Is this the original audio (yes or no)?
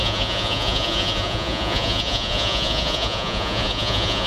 no